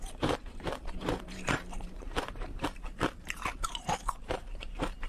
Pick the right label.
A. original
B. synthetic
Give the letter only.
B